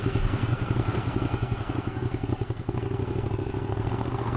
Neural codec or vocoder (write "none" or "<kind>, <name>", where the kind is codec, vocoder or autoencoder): codec, SNAC